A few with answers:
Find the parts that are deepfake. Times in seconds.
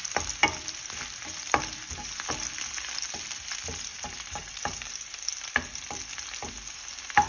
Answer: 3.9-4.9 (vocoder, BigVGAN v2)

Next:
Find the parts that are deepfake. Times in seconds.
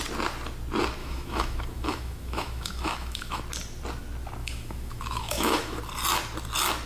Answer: 1.0-3.4 (autoencoder, DAC-VAE); 4.4-5.8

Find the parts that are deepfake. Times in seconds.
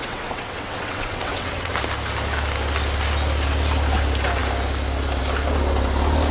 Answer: 0.0-1.7 (vocoder, WaveNeXt)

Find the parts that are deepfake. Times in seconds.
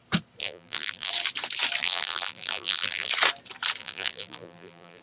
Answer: 0.4-1.1 (vocoder, BigVGAN v2); 1.8-3.1; 3.8-5.0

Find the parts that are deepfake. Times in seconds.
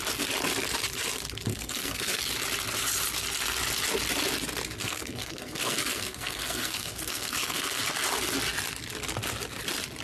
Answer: 1.5-2.2 (codec, SNAC); 4.8-7.8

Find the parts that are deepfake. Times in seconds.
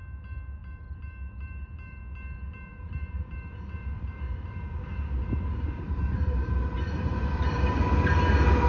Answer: 0.6-2.0 (vocoder, BigVGAN v2); 2.7-7.8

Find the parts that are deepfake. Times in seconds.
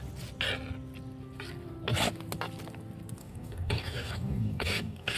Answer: 3.2-5.2 (codec, DAC)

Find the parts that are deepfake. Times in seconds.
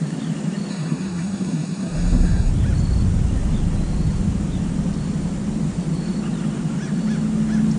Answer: 0.7-2.5 (codec, SNAC)